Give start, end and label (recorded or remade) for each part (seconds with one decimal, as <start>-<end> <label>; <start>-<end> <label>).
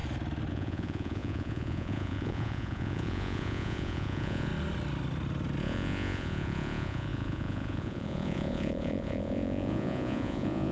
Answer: 0.0-0.5 recorded; 0.5-4.5 remade; 4.5-5.6 recorded; 5.6-10.7 remade